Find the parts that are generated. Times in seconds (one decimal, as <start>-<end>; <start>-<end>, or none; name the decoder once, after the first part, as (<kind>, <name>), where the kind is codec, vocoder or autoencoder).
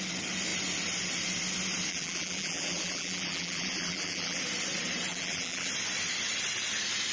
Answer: 1.9-4.4 (vocoder, BigVGAN v2); 5.1-5.7